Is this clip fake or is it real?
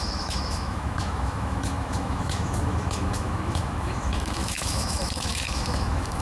fake